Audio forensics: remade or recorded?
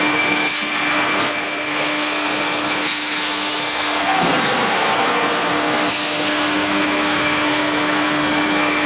remade